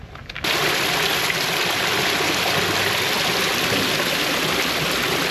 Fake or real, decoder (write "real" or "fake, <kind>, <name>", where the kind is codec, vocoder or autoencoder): real